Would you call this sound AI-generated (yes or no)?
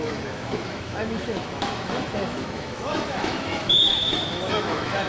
yes